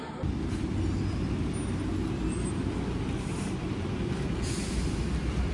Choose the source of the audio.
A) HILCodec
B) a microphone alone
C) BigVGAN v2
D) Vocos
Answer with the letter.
B